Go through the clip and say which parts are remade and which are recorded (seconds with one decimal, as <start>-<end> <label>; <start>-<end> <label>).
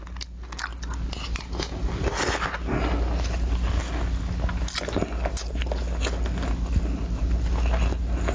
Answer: 0.0-8.3 recorded